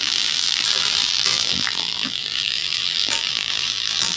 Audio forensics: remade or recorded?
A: remade